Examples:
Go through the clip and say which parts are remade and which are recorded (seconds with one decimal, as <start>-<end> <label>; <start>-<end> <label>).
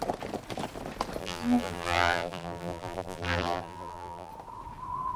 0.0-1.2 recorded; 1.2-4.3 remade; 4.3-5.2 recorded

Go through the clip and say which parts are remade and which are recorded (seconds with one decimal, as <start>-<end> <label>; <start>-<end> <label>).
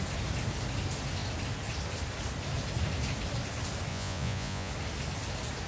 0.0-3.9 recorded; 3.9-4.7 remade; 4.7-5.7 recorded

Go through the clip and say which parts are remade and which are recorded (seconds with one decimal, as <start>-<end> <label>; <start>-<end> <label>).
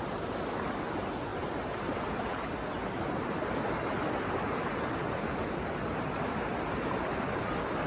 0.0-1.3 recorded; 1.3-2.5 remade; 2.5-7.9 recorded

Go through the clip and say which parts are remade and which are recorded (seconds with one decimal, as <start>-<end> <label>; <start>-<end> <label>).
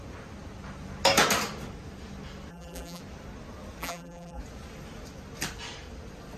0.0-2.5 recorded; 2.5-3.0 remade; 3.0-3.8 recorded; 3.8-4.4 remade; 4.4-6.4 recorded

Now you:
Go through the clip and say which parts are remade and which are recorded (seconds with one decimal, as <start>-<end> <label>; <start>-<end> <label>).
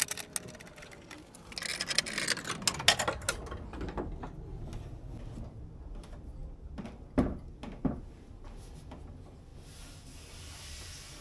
0.0-11.2 recorded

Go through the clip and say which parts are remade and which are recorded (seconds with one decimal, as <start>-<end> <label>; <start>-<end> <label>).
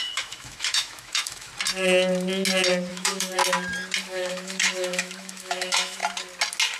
0.0-1.5 remade; 1.5-2.9 recorded; 2.9-3.4 remade; 3.4-4.0 recorded; 4.0-6.0 remade; 6.0-6.8 recorded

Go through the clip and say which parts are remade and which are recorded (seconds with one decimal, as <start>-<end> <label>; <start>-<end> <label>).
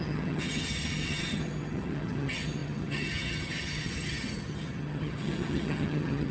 0.0-6.3 remade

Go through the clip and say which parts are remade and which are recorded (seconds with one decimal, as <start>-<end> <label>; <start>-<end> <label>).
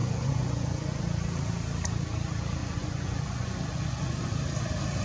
0.0-1.0 remade; 1.0-2.6 recorded; 2.6-4.3 remade; 4.3-5.0 recorded